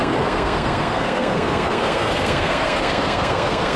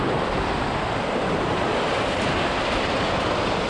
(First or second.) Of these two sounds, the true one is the second